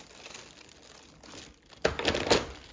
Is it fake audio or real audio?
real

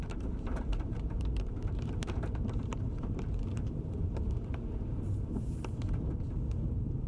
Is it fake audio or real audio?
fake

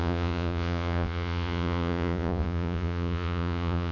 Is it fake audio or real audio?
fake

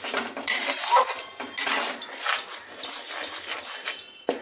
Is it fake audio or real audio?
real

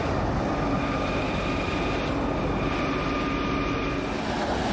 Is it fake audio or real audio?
real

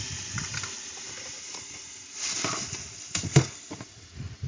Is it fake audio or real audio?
real